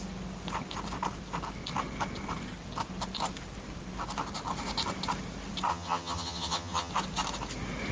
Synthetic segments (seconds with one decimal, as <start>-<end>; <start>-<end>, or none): 5.7-6.9

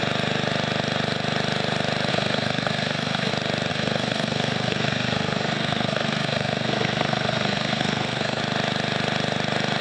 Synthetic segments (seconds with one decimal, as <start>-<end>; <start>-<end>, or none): 2.1-3.3; 3.7-8.4

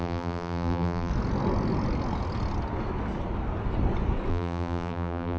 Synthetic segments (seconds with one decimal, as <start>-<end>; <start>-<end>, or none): 0.0-1.1; 4.3-5.4

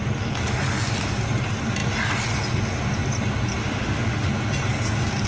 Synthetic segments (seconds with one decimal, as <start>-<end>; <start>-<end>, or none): 3.6-4.3

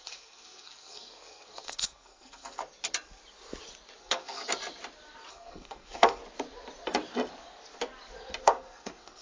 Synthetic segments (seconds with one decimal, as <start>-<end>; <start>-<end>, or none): 0.0-2.6; 4.0-4.4; 5.3-6.2; 8.4-9.2